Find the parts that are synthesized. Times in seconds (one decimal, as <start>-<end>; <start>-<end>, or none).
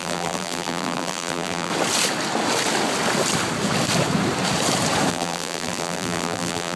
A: 0.0-1.7; 5.1-6.8